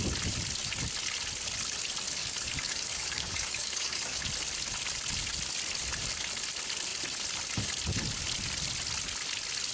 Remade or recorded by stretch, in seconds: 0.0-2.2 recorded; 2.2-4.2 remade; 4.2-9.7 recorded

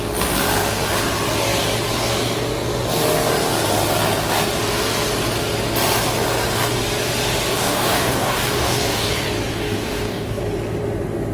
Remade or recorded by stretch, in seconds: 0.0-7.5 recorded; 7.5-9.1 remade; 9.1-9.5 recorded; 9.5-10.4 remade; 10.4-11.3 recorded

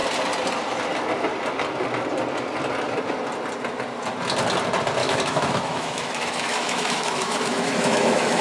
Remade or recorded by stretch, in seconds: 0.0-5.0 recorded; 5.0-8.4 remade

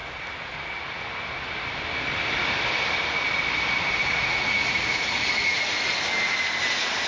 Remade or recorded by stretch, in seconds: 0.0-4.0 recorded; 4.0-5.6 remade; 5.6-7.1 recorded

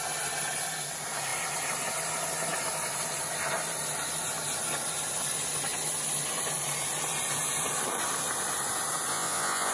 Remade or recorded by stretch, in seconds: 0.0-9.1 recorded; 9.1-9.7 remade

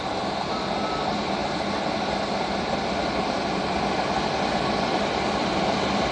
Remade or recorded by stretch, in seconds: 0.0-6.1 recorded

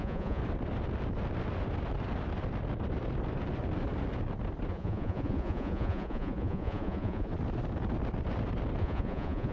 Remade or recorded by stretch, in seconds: 0.0-0.4 remade; 0.4-4.7 recorded; 4.7-7.3 remade; 7.3-8.8 recorded; 8.8-9.5 remade